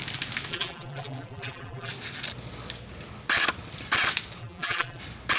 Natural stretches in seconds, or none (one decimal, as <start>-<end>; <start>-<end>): 0.0-0.5; 1.9-4.4; 5.0-5.4